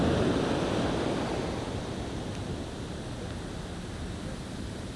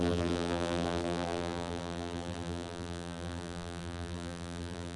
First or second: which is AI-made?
second